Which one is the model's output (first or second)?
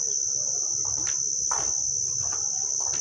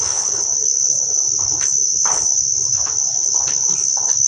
second